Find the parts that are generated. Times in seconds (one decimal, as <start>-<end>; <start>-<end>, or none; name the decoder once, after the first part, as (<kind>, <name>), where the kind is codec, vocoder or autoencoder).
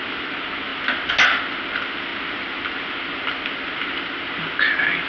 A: none